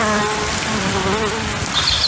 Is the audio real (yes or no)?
yes